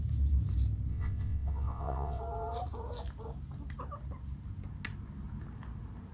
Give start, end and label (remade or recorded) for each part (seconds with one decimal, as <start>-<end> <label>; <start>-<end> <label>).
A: 0.0-0.9 recorded; 0.9-2.2 remade; 2.2-6.1 recorded